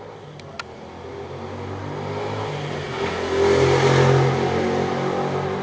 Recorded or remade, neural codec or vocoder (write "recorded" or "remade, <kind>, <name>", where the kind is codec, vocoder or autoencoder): recorded